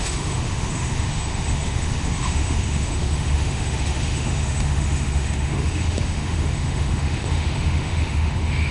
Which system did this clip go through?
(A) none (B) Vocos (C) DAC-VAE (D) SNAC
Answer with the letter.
C